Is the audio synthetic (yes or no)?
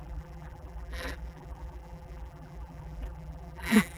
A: yes